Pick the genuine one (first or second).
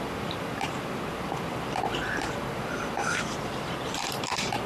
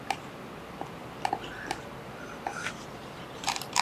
second